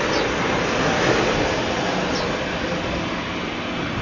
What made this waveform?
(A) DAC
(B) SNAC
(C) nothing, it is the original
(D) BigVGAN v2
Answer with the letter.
C